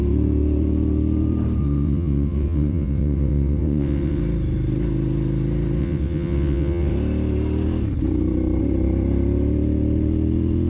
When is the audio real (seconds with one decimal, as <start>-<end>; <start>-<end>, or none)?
0.0-1.6; 4.2-5.8; 6.9-10.7